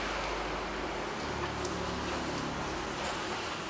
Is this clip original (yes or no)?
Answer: yes